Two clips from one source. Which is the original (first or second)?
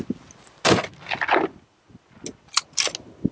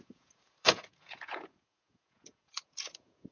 first